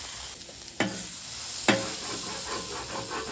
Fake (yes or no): no